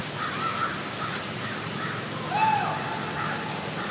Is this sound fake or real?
real